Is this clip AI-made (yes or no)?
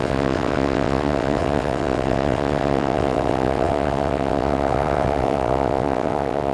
yes